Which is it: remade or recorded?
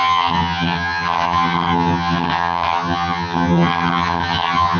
remade